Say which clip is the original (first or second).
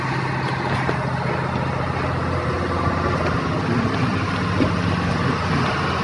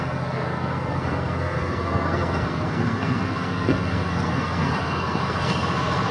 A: first